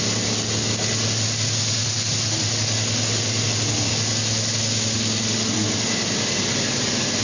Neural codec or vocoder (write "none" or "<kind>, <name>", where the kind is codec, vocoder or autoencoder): none